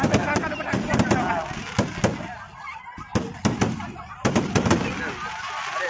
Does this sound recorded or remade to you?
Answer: recorded